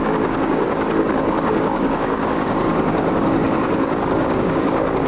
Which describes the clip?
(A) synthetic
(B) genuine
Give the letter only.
A